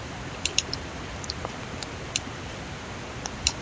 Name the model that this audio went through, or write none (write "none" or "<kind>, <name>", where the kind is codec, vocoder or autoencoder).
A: none